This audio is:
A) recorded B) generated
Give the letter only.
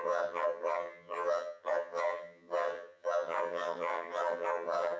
B